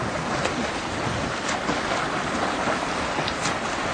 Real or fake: real